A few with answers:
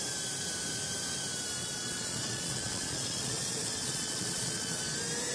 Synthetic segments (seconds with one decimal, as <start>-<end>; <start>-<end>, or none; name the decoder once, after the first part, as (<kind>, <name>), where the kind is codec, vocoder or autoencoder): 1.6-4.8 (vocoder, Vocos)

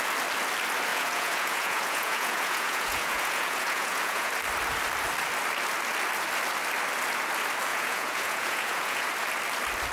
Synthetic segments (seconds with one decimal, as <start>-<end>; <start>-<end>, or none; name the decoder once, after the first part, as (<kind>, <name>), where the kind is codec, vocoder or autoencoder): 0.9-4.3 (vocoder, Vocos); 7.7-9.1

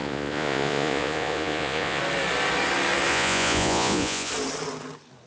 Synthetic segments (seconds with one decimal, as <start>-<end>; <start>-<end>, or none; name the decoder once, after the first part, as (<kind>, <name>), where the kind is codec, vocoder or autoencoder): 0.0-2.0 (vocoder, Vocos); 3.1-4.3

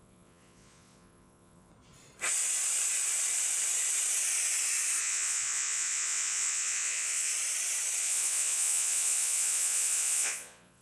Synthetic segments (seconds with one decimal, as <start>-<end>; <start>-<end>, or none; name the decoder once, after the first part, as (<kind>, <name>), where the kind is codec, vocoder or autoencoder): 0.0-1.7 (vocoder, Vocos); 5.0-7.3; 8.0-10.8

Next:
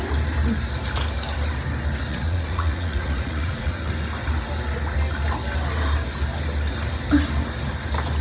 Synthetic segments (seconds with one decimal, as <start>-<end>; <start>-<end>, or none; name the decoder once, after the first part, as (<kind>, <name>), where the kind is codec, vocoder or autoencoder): 2.1-3.9 (vocoder, Vocos)